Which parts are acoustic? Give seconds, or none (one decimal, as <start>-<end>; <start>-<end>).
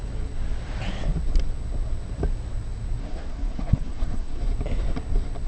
0.0-3.0; 4.4-5.5